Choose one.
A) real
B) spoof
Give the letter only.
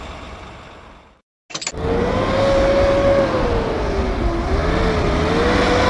A